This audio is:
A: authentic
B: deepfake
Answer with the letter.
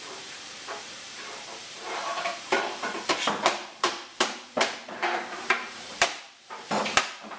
B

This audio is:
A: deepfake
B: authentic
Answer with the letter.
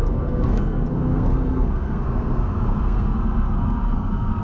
A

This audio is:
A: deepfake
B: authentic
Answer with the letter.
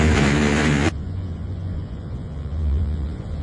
A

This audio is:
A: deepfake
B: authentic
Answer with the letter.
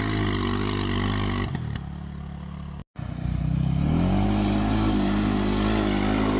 B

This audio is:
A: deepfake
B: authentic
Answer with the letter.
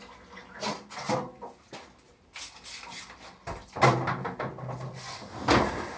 B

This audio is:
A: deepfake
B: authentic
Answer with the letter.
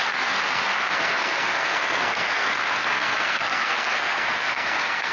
A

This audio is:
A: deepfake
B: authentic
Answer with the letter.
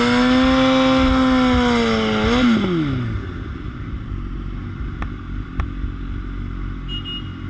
B